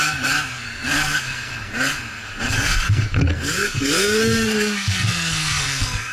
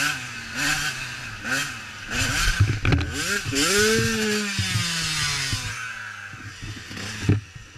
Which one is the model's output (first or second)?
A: first